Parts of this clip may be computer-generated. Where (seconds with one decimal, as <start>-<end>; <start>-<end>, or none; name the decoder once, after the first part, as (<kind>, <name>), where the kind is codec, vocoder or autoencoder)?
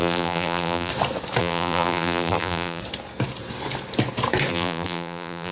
0.0-0.9 (vocoder, BigVGAN v2); 1.4-2.8; 4.5-5.5